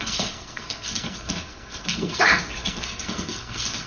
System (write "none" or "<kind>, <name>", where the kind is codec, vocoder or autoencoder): codec, SNAC